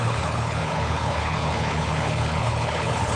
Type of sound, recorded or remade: remade